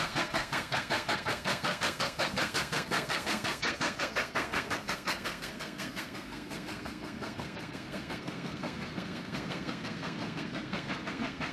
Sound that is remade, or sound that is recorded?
remade